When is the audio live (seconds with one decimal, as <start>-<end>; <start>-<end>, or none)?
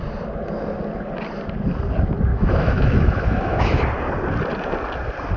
0.0-2.3; 3.8-5.4